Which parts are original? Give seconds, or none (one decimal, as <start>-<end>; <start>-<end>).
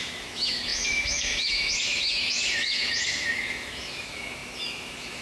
none